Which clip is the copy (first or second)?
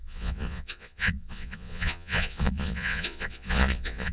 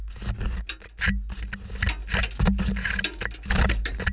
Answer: first